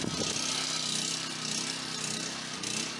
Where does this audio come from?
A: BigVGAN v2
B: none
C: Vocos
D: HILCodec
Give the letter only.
B